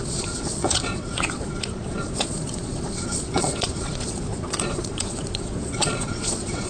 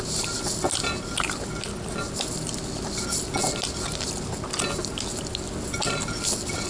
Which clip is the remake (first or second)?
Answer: first